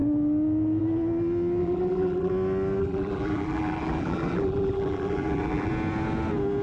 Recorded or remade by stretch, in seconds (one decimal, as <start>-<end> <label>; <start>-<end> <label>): 0.0-1.6 recorded; 1.6-2.3 remade; 2.3-2.8 recorded; 2.8-5.7 remade; 5.7-6.6 recorded